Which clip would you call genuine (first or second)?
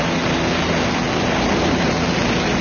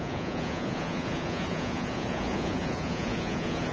first